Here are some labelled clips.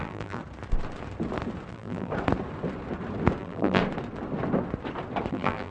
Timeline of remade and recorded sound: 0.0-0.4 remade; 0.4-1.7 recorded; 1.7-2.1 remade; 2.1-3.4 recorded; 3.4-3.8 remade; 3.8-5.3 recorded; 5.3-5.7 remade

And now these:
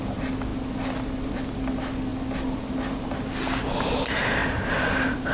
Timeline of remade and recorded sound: 0.0-2.1 recorded; 2.1-3.6 remade; 3.6-4.4 recorded; 4.4-5.3 remade

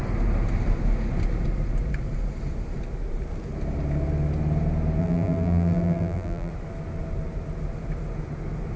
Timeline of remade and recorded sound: 0.0-5.0 recorded; 5.0-6.5 remade; 6.5-8.8 recorded

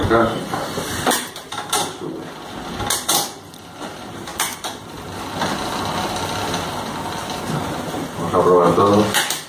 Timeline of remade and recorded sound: 0.0-1.8 remade; 1.8-9.5 recorded

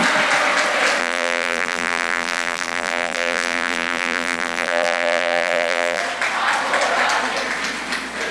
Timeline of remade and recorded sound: 0.0-1.0 recorded; 1.0-6.0 remade; 6.0-8.3 recorded

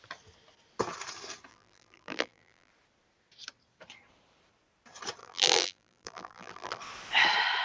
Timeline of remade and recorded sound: 0.0-1.5 recorded; 1.5-2.7 remade; 2.7-5.2 recorded; 5.2-6.8 remade; 6.8-7.6 recorded